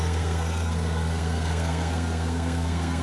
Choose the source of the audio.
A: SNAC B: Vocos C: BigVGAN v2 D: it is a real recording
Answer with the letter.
A